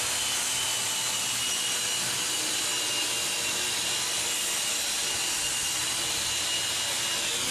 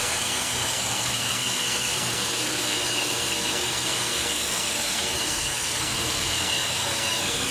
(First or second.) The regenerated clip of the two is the second